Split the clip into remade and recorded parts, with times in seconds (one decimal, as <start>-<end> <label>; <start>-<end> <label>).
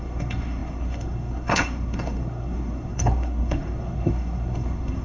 0.0-5.0 remade